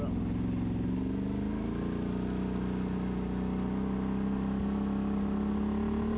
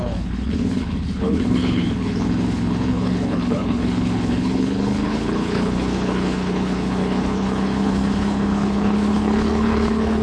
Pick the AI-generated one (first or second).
second